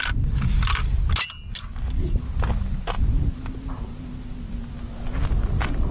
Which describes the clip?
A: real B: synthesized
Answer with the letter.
A